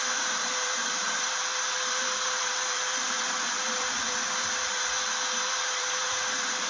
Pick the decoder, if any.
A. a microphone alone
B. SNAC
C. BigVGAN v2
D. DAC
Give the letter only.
C